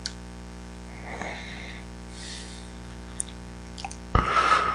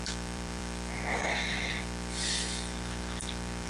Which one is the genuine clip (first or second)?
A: first